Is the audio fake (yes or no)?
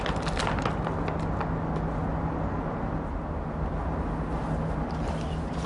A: no